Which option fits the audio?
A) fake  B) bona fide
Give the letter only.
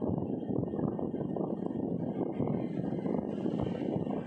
B